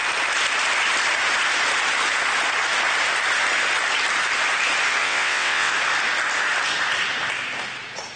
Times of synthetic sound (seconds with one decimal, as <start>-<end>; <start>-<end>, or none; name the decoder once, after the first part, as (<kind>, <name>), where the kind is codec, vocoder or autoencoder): 5.0-5.7 (vocoder, WaveNeXt)